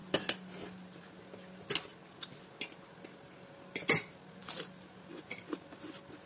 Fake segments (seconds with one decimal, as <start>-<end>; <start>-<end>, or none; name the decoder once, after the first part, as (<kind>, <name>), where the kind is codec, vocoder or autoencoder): none